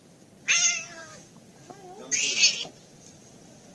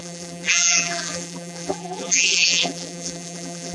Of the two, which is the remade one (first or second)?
second